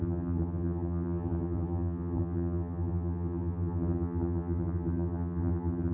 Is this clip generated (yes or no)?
yes